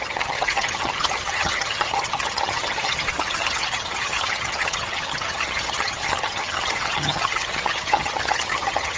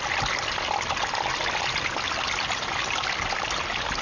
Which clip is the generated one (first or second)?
first